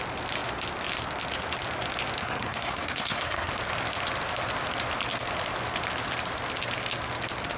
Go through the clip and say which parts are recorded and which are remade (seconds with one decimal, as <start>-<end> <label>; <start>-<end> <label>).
0.0-2.2 recorded; 2.2-3.5 remade; 3.5-7.6 recorded